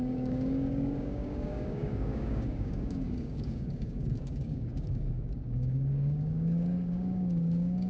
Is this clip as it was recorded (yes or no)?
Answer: no